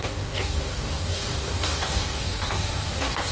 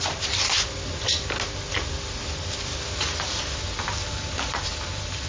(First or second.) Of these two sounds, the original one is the second